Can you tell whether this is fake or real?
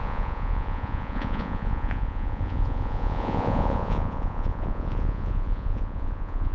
fake